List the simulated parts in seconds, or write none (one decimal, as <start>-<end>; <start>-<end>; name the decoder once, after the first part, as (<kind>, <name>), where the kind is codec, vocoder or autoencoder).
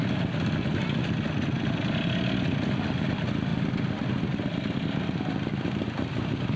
none